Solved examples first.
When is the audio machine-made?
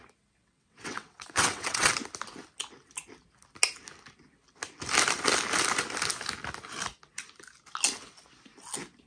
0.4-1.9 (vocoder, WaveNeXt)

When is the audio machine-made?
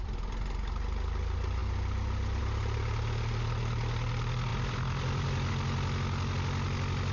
4.5-5.5 (vocoder, BigVGAN v2)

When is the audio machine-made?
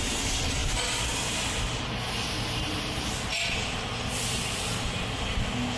none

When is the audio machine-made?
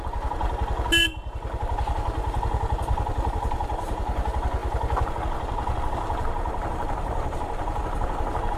none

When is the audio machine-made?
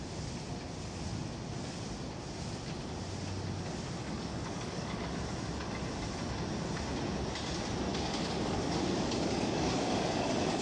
4.0-5.2 (codec, DAC); 7.9-10.6